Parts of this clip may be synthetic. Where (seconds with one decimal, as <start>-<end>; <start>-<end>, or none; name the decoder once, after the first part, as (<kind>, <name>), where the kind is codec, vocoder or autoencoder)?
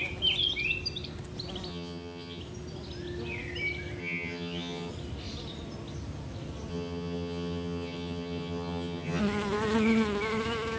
1.7-2.4 (vocoder, HiFi-GAN); 4.0-4.9; 6.7-9.2